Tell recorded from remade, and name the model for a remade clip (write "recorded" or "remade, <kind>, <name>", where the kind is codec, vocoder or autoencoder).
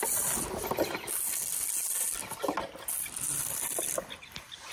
recorded